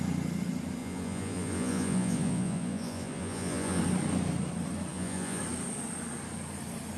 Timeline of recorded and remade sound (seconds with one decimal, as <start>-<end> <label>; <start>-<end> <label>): 0.0-0.8 recorded; 0.8-3.8 remade; 3.8-4.9 recorded; 4.9-5.4 remade; 5.4-7.0 recorded